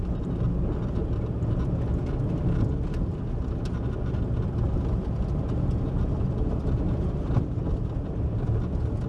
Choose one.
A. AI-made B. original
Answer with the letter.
B